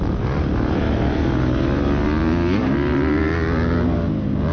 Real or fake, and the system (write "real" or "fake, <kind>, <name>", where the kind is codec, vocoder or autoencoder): real